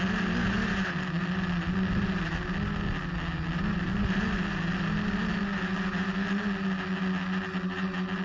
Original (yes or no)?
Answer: yes